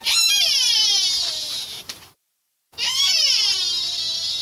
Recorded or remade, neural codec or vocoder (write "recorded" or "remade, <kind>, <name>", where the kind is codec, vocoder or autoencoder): remade, vocoder, BigVGAN v2